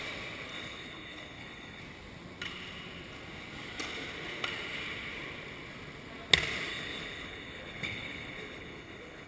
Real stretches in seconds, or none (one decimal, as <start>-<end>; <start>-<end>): 0.0-0.5; 1.8-6.7